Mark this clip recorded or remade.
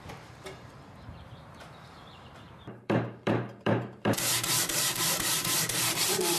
remade